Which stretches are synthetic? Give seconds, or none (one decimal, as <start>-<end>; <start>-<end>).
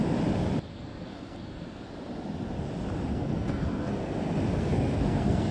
0.7-1.8; 3.1-4.0; 4.6-5.5